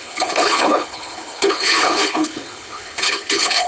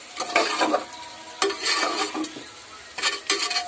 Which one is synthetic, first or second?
first